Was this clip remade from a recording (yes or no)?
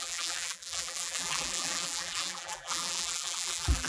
yes